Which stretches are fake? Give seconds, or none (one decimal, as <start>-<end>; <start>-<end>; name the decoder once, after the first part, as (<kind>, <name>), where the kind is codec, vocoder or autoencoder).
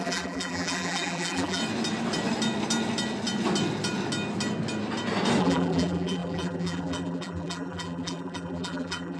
0.0-1.6 (vocoder, BigVGAN v2); 5.4-9.2